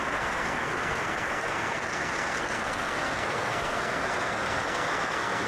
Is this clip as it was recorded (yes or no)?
no